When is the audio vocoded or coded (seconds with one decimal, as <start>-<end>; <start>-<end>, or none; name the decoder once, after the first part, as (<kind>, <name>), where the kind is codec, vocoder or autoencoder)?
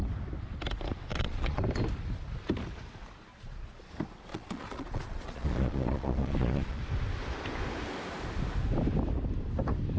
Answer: 1.1-1.6 (vocoder, Vocos); 3.3-3.9; 4.3-6.8